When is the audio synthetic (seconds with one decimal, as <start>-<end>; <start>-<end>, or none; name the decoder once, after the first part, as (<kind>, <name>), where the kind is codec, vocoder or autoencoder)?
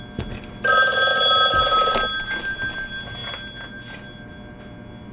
none